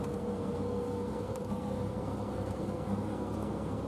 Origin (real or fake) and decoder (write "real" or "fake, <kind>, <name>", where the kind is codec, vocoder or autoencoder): fake, codec, SNAC